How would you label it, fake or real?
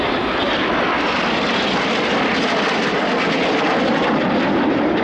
real